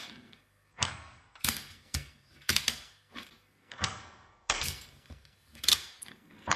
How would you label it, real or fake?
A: fake